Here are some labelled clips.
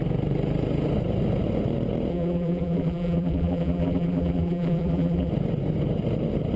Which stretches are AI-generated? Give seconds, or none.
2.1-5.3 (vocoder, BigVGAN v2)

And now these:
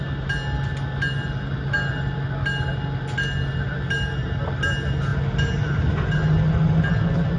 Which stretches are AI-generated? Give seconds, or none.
none

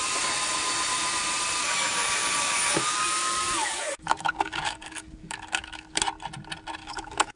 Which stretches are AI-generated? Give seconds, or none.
1.6-6.0 (codec, DAC); 6.8-7.4

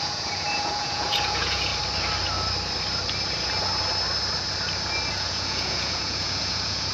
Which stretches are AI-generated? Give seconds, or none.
0.0-1.7 (vocoder, Vocos); 5.1-6.9

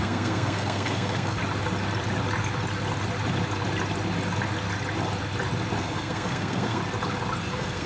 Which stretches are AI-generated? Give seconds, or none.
0.0-1.4 (codec, SNAC); 5.8-6.8; 7.5-7.9

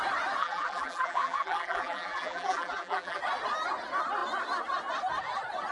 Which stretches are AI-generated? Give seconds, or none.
0.4-3.2 (vocoder, BigVGAN v2)